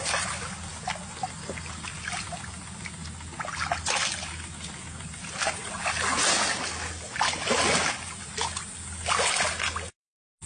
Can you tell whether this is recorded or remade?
recorded